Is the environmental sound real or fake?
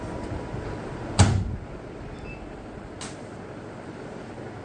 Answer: real